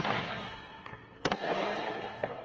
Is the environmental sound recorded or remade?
remade